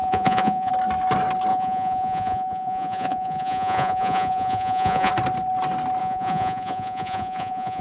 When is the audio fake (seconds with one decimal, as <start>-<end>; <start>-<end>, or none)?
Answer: 0.0-0.7; 1.5-5.1; 6.0-7.8